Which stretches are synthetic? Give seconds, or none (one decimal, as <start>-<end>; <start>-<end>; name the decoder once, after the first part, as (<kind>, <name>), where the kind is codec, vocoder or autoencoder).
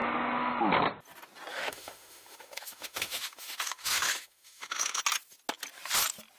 1.5-5.0 (autoencoder, DAC-VAE)